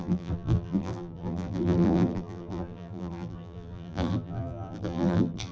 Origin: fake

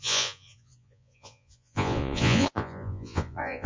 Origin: fake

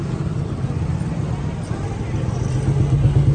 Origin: real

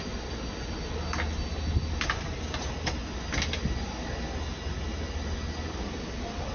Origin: real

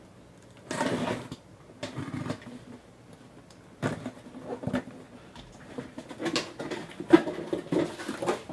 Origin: real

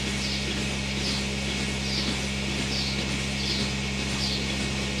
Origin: real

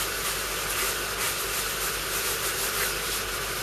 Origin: real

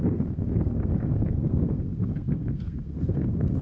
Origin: fake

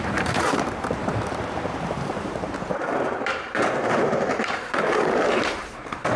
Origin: fake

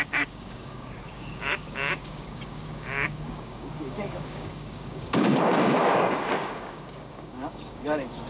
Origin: fake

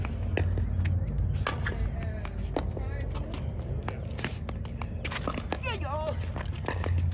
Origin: real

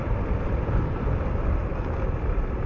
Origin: real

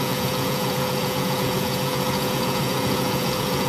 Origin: fake